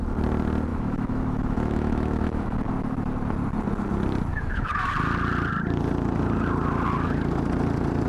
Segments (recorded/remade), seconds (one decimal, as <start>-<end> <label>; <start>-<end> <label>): 0.0-0.7 recorded; 0.7-2.7 remade; 2.7-4.3 recorded; 4.3-4.9 remade; 4.9-8.1 recorded